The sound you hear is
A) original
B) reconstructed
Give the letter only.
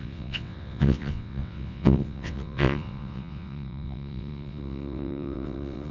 B